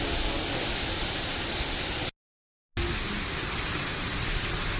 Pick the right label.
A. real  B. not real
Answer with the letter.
A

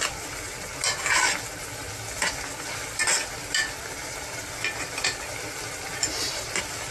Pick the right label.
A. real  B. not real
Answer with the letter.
A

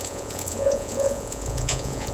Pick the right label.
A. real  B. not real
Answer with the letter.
B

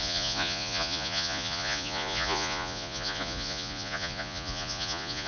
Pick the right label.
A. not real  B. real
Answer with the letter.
A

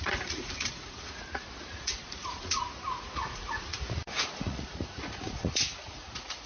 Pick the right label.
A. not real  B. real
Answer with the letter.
A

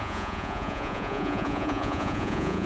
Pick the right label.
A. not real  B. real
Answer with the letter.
A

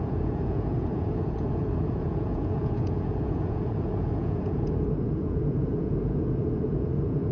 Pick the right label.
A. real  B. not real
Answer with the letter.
B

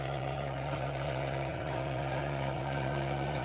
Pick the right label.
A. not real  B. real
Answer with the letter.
A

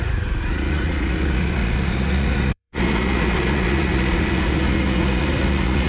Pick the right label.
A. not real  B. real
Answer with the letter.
A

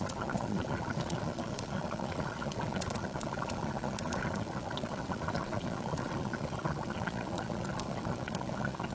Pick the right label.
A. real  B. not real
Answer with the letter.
B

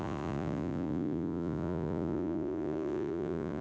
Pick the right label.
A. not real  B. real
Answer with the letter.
A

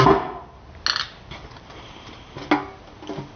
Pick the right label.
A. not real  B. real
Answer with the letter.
B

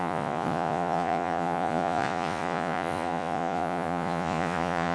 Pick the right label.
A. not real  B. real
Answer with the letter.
A